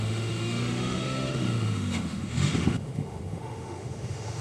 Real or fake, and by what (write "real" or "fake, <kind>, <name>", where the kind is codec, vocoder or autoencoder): fake, autoencoder, DAC-VAE